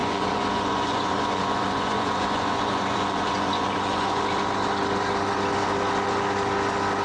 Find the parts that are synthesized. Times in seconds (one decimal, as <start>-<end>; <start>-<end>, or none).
0.0-4.2